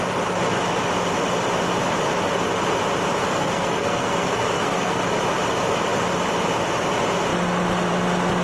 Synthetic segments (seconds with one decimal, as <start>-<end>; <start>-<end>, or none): 3.2-5.0